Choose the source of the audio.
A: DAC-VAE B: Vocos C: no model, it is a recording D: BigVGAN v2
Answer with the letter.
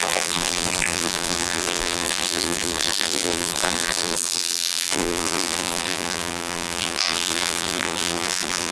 D